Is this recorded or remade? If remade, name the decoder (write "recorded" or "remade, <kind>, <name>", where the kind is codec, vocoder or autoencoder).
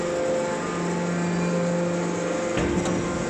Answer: recorded